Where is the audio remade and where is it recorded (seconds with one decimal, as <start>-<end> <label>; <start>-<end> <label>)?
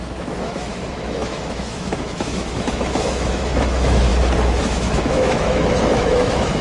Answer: 0.0-4.1 remade; 4.1-4.6 recorded; 4.6-6.6 remade